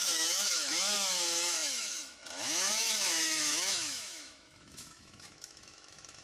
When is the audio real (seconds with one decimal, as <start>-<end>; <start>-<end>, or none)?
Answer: none